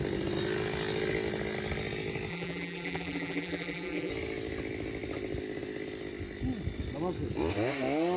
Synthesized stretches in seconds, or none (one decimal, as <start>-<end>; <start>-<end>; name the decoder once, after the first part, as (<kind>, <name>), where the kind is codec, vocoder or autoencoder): 2.3-4.1 (vocoder, BigVGAN v2)